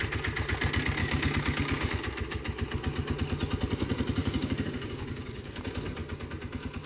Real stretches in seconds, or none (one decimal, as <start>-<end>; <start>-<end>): 0.0-1.0; 1.9-4.2; 5.6-6.9